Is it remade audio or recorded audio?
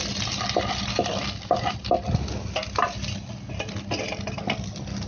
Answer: recorded